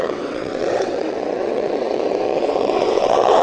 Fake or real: fake